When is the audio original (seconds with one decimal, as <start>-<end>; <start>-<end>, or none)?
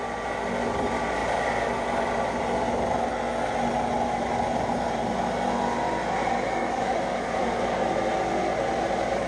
0.0-6.6; 7.9-9.3